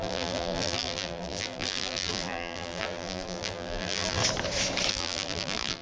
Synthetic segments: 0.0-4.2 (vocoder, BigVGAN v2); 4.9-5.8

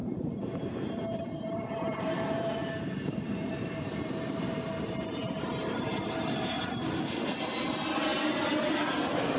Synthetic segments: 0.0-4.5 (vocoder, BigVGAN v2)

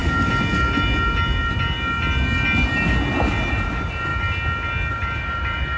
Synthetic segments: 3.5-4.1 (vocoder, BigVGAN v2); 4.9-5.8

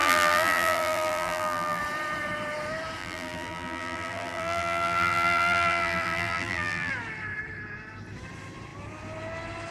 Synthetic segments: 0.0-1.8 (vocoder, BigVGAN v2); 3.0-6.9

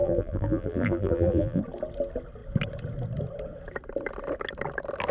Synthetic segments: 0.0-1.6 (vocoder, BigVGAN v2)